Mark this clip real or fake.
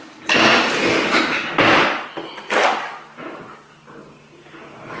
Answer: real